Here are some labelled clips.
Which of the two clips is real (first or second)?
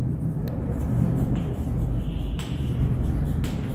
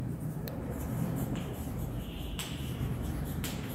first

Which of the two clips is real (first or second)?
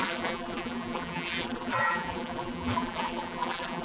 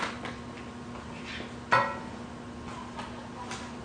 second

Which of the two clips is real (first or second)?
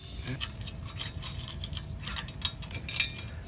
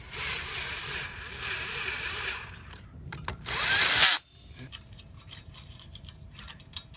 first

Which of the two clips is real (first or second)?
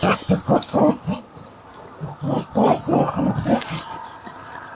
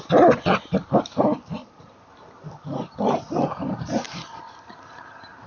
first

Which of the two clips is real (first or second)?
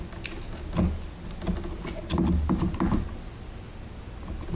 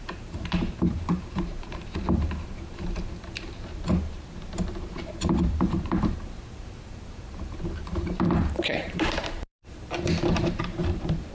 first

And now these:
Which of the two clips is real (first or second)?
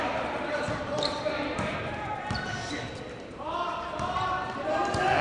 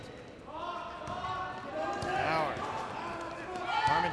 second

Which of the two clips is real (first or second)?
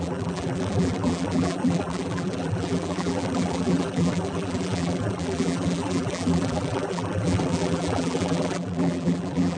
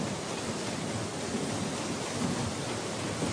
second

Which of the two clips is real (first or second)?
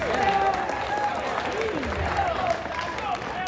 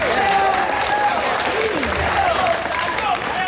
first